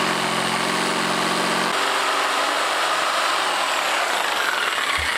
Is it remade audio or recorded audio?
recorded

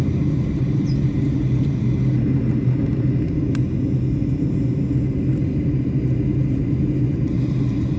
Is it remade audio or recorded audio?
recorded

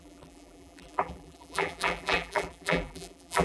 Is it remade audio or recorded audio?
remade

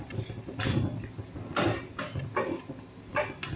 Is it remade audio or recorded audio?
recorded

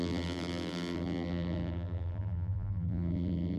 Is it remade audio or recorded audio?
remade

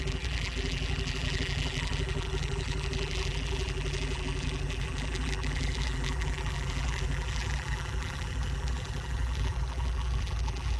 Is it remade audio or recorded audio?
remade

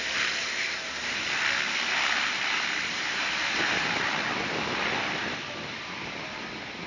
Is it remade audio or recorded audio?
remade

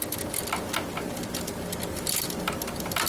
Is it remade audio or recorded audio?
recorded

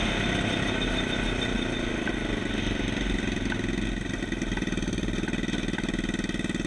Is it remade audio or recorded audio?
recorded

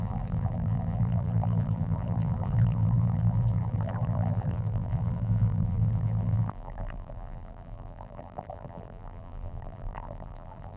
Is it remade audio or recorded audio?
remade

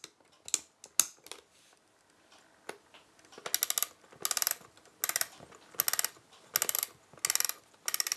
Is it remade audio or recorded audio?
recorded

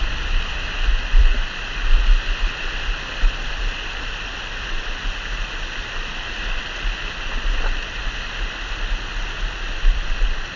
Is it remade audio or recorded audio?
recorded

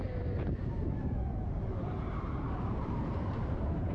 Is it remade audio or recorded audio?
remade